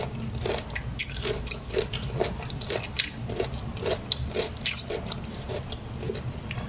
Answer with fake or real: real